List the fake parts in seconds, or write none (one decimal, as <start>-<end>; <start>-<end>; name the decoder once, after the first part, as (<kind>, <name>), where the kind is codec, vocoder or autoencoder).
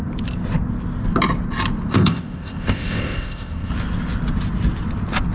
1.9-3.7 (codec, ZipCodec)